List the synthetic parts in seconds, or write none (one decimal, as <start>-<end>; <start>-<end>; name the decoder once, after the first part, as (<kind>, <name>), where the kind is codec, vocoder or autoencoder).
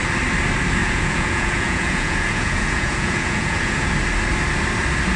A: 0.8-3.9 (vocoder, Vocos)